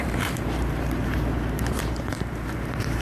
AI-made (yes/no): yes